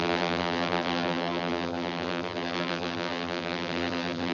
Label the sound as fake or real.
fake